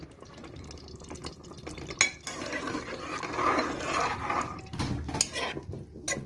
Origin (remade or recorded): recorded